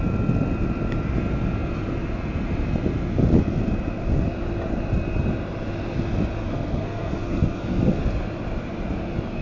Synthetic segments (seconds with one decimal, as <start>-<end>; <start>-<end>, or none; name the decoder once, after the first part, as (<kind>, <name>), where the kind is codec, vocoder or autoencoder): 6.5-8.0 (codec, SNAC)